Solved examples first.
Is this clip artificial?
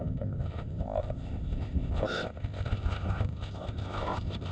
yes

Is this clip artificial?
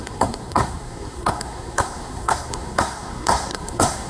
yes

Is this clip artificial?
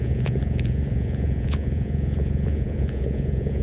yes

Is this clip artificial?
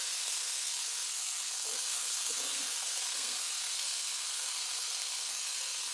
yes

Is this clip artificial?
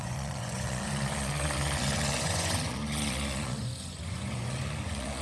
yes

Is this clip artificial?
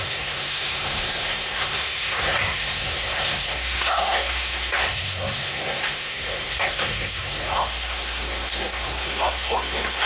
yes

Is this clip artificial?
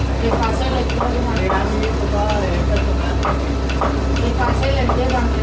no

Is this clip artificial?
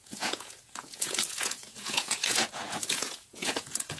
yes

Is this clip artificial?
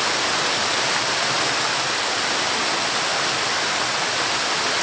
no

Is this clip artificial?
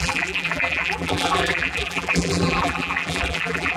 yes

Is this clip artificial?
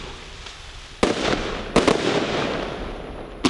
no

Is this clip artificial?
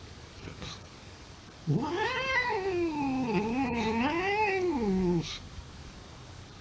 yes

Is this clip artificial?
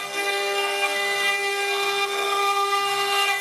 yes